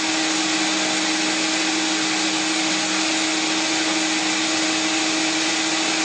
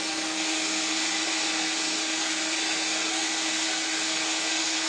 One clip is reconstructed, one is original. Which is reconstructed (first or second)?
second